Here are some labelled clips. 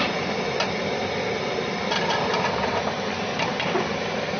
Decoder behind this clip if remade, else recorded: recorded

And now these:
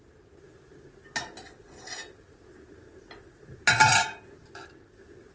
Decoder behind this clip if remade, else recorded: recorded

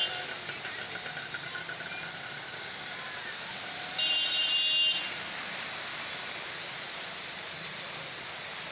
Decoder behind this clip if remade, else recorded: recorded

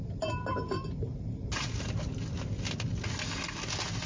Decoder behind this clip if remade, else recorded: recorded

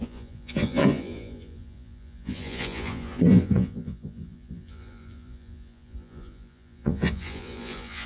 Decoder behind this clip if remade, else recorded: remade, vocoder, Vocos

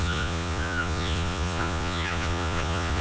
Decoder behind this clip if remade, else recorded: remade, vocoder, Vocos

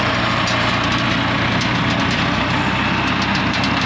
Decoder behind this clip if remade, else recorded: recorded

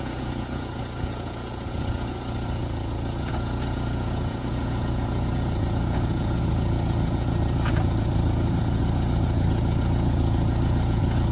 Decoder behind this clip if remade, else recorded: remade, vocoder, Vocos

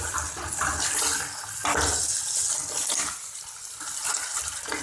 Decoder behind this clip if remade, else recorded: recorded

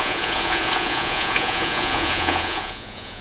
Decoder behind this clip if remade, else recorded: remade, vocoder, Vocos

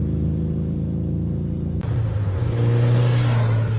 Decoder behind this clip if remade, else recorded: recorded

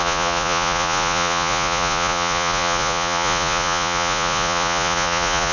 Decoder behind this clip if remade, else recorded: remade, vocoder, Vocos